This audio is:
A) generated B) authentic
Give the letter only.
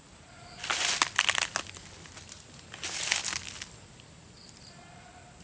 B